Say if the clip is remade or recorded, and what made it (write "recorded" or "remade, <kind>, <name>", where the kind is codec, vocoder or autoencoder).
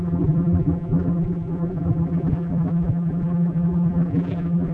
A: remade, vocoder, BigVGAN v2